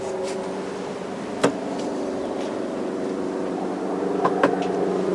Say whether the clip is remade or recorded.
remade